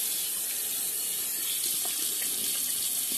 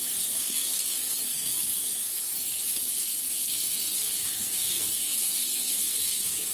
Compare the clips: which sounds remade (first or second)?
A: second